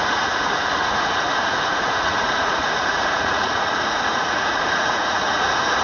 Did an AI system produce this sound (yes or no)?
yes